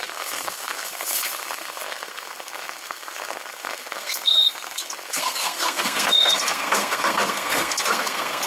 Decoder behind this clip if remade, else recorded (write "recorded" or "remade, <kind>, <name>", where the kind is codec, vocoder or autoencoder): remade, codec, SNAC